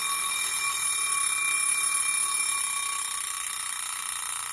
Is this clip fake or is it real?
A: real